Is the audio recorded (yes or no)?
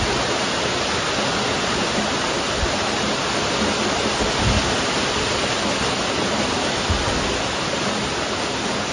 yes